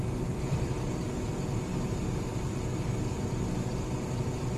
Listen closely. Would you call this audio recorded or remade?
recorded